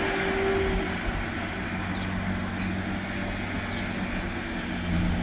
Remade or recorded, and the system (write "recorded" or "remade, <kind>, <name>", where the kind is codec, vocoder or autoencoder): recorded